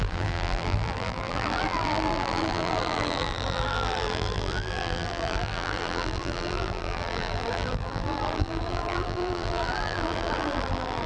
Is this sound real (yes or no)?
no